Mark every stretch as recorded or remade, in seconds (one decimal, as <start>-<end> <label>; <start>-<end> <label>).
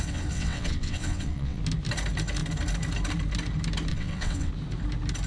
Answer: 0.0-1.6 remade; 1.6-3.9 recorded; 3.9-4.5 remade; 4.5-5.3 recorded